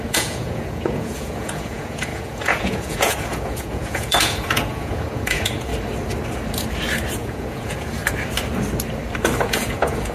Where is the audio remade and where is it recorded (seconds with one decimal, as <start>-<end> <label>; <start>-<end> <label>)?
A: 0.0-5.7 remade; 5.7-7.1 recorded; 7.1-8.0 remade; 8.0-9.4 recorded; 9.4-10.1 remade